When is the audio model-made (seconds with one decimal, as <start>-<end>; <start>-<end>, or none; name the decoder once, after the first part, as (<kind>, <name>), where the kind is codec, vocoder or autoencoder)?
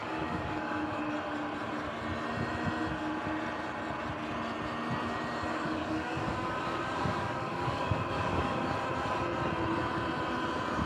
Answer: 0.0-1.0 (codec, DAC); 5.5-8.7